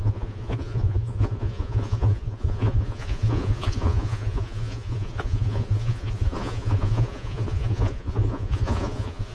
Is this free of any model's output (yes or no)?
no